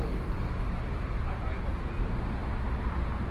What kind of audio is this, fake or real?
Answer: real